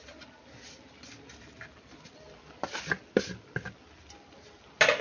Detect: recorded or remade recorded